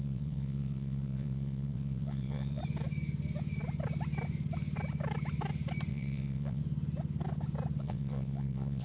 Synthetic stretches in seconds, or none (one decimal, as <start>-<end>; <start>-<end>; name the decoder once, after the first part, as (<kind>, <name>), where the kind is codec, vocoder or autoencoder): 0.0-2.6 (vocoder, WaveNeXt); 5.9-6.6; 7.8-8.8